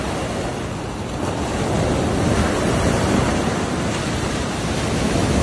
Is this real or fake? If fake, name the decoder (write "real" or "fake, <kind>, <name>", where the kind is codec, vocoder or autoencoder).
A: real